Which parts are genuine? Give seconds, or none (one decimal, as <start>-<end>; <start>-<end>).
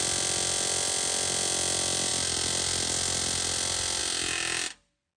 0.0-5.2